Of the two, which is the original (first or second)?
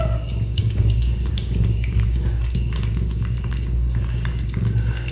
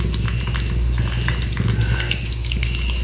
second